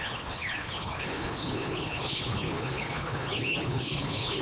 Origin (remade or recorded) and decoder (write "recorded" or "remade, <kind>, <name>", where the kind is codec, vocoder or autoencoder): remade, codec, HILCodec